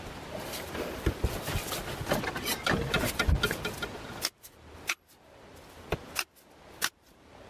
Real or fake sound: real